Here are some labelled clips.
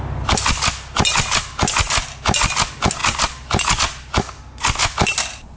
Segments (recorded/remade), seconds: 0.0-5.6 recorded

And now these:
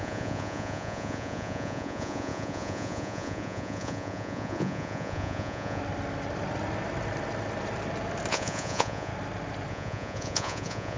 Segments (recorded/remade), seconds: 0.0-5.8 remade; 5.8-8.3 recorded; 8.3-9.1 remade; 9.1-9.7 recorded; 9.7-11.0 remade

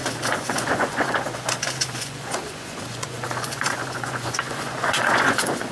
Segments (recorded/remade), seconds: 0.0-5.7 remade

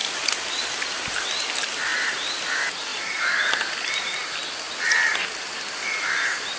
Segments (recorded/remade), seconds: 0.0-6.6 recorded

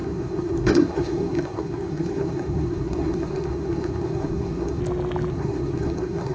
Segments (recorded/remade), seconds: 0.0-4.8 remade; 4.8-5.3 recorded; 5.3-6.3 remade